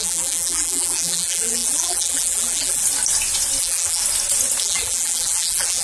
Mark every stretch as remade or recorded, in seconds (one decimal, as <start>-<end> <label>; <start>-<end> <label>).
0.0-2.8 remade; 2.8-3.6 recorded; 3.6-4.0 remade; 4.0-4.6 recorded; 4.6-5.8 remade